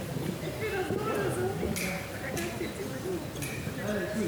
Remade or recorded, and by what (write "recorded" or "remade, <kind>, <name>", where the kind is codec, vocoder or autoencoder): recorded